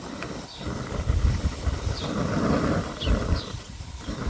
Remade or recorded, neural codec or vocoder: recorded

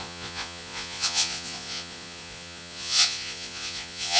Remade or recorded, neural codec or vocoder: remade, vocoder, Vocos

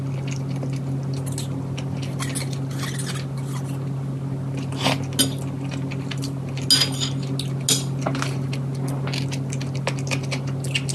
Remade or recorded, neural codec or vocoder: recorded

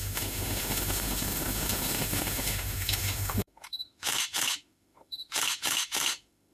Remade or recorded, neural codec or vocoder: remade, autoencoder, DAC-VAE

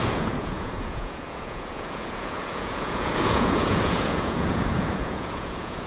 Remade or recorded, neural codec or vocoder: remade, vocoder, Vocos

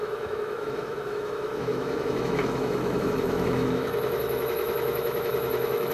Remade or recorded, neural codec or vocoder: remade, autoencoder, DAC-VAE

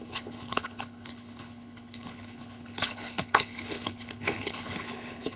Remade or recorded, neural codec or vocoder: remade, codec, HILCodec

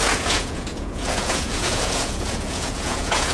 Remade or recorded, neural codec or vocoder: remade, vocoder, Vocos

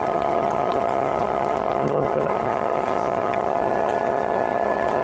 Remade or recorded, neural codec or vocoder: remade, vocoder, HiFi-GAN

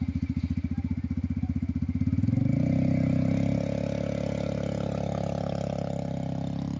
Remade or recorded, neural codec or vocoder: recorded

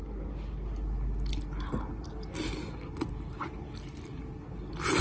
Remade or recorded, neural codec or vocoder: recorded